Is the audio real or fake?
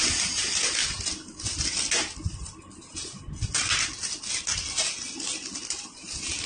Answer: real